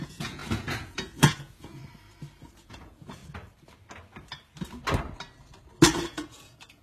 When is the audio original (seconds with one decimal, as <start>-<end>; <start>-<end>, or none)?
1.8-2.4; 3.2-6.0